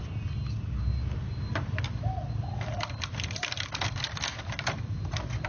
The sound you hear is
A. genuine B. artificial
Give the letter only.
A